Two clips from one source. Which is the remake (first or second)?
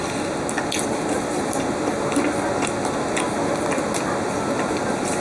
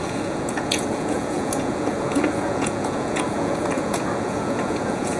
second